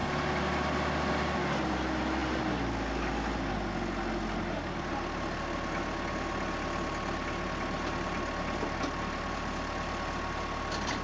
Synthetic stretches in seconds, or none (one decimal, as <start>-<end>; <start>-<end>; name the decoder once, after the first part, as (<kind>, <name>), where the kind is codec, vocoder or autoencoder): none